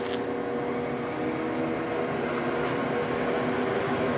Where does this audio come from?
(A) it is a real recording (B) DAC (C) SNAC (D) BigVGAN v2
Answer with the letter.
A